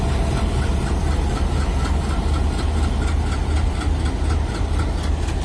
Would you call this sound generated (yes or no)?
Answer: no